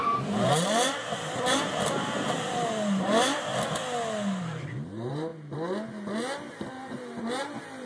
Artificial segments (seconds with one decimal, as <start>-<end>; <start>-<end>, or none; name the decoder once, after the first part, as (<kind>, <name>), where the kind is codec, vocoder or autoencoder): 0.0-3.5 (vocoder, BigVGAN v2); 4.4-5.3; 6.7-7.9